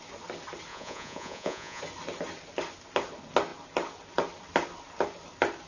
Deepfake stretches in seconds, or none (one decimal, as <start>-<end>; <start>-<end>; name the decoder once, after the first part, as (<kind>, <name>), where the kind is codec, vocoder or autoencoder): 0.7-1.8 (vocoder, Vocos)